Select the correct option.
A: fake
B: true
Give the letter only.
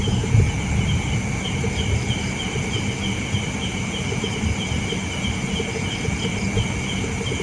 B